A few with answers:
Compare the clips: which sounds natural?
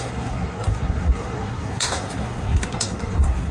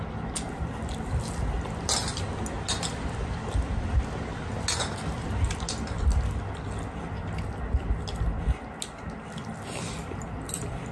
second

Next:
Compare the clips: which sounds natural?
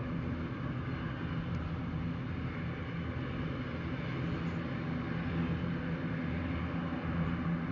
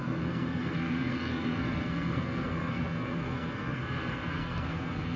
first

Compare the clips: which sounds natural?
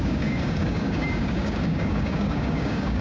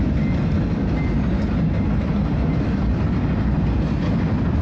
second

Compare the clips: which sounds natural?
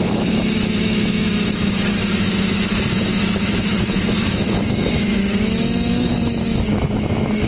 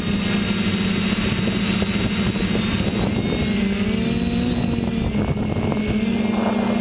second